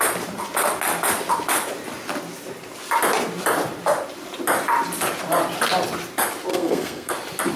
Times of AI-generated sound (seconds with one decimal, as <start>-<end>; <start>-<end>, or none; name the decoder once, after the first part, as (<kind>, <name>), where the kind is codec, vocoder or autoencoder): 6.5-7.1 (codec, SNAC)